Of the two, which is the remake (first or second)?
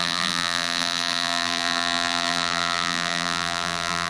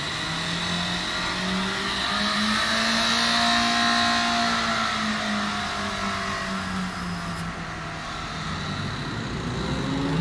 first